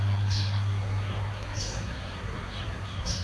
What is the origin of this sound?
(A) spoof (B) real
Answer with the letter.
A